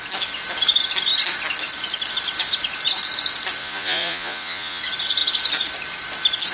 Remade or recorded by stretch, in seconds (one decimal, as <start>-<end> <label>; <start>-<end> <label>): 0.0-3.6 recorded; 3.6-4.8 remade; 4.8-6.5 recorded